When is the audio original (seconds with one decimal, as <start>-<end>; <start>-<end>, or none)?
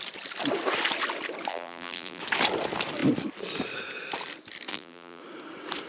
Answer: 0.0-1.5; 2.2-4.7; 5.2-5.9